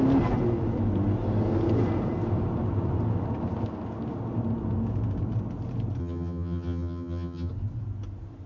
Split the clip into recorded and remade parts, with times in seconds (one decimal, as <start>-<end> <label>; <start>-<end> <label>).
0.0-6.0 recorded; 6.0-7.5 remade; 7.5-8.5 recorded